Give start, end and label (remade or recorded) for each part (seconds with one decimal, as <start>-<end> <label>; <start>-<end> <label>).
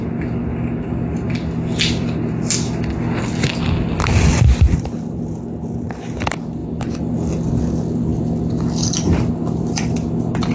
0.0-10.5 recorded